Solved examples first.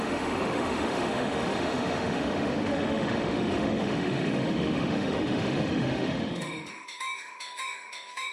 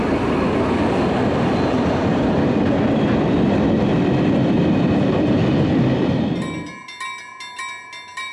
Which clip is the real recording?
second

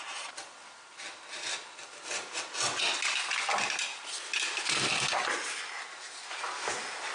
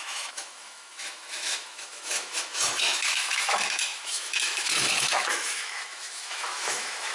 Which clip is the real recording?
first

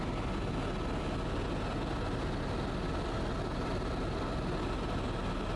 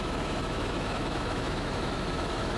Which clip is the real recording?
first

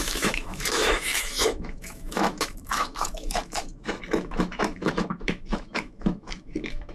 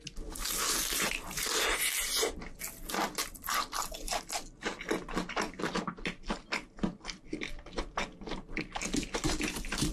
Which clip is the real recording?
second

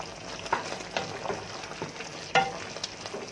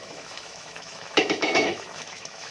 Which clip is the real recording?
first